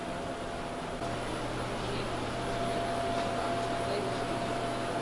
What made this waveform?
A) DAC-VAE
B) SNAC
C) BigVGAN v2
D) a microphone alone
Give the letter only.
D